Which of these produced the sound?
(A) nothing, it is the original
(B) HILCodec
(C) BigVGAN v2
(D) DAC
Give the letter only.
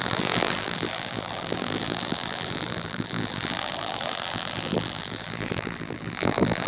C